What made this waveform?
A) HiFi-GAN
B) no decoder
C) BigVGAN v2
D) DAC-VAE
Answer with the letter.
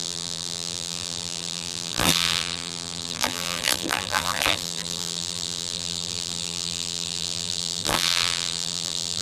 C